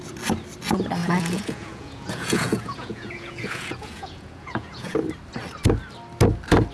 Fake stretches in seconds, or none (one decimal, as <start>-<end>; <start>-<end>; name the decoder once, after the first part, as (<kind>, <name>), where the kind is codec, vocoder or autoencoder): 1.0-5.0 (vocoder, Vocos)